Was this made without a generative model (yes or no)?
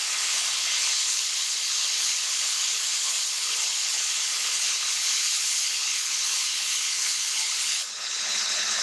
no